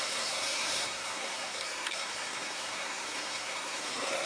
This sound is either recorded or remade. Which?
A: remade